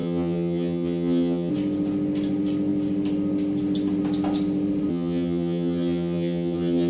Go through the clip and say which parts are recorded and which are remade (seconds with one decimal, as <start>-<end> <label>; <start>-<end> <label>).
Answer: 0.0-1.5 remade; 1.5-4.9 recorded; 4.9-6.9 remade